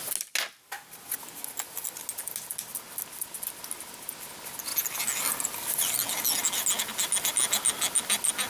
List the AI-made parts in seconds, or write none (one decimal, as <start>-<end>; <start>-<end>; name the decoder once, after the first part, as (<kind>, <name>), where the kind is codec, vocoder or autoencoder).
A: none